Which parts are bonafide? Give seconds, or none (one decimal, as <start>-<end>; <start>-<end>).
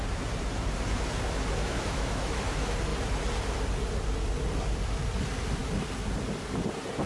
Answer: 0.0-1.6; 2.4-7.1